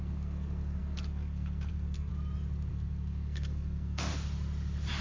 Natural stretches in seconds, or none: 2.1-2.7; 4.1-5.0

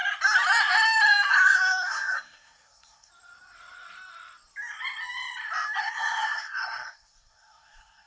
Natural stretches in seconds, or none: 0.0-1.3; 3.1-5.8

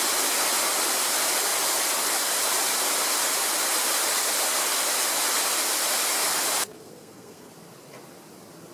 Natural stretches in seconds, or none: 0.0-6.7; 7.5-8.7

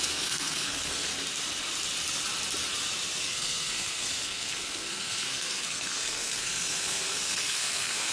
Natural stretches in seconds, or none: 1.1-3.2

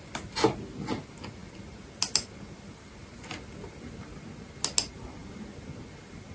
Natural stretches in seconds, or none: 0.0-6.3